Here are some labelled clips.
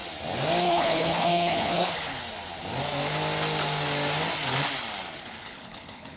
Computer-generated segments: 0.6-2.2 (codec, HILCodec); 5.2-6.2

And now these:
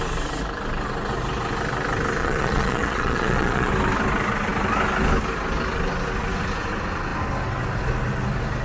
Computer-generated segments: 2.2-3.7 (vocoder, Vocos)

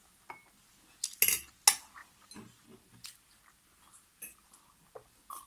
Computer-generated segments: none

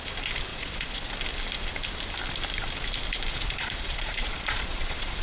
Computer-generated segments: 0.5-1.1 (vocoder, Vocos); 3.3-5.2

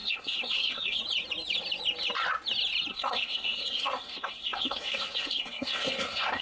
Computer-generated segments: 0.0-1.0 (codec, SNAC); 2.9-6.4

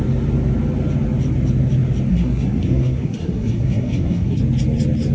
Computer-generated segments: 2.1-4.4 (codec, SNAC)